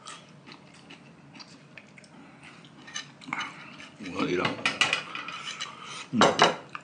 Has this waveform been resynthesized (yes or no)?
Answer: no